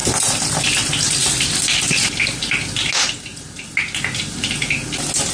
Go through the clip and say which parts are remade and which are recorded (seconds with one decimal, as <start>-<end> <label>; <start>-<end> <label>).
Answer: 0.0-5.3 recorded